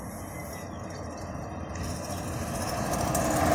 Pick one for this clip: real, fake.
real